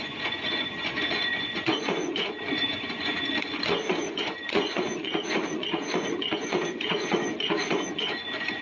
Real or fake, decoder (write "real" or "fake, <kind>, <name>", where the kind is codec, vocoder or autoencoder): fake, vocoder, Vocos